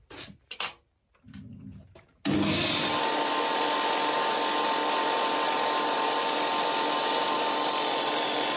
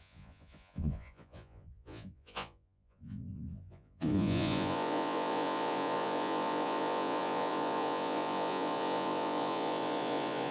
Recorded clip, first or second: first